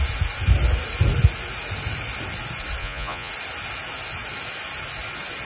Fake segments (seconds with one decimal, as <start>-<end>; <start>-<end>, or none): 2.8-3.3